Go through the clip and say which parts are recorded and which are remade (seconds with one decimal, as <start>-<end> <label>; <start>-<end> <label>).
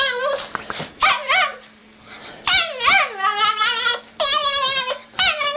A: 0.0-1.8 recorded; 1.8-4.0 remade; 4.0-5.6 recorded